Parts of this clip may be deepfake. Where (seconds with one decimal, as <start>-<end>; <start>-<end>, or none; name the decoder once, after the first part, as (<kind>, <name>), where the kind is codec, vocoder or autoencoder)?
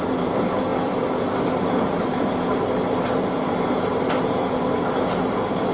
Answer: 0.0-5.7 (vocoder, BigVGAN v2)